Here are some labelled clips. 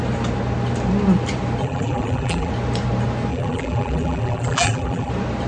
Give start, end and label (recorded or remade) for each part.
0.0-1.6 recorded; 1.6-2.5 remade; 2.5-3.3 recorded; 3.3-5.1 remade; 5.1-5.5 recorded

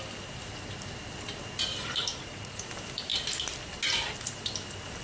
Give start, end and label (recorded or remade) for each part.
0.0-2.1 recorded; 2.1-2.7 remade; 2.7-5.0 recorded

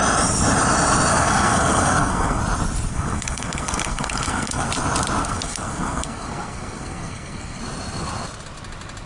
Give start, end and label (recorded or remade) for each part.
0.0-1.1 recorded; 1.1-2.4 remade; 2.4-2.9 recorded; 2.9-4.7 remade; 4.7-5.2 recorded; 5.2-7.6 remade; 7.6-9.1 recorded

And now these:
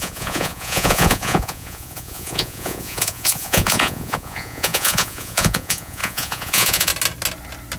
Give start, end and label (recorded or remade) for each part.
0.0-6.9 remade; 6.9-7.8 recorded

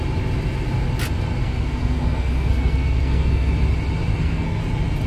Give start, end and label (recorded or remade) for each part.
0.0-1.4 recorded; 1.4-3.5 remade; 3.5-4.1 recorded; 4.1-4.6 remade; 4.6-5.1 recorded

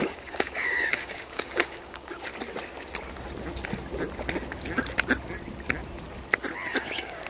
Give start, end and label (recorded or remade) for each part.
0.0-2.3 remade; 2.3-6.7 recorded; 6.7-7.3 remade